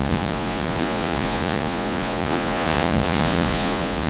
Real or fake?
fake